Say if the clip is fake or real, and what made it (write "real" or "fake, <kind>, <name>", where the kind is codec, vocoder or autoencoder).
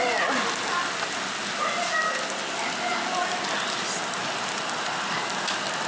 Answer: real